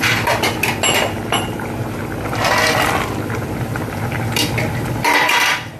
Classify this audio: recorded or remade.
recorded